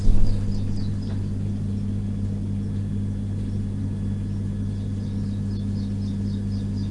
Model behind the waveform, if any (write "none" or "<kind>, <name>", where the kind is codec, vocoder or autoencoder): none